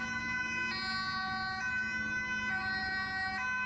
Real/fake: real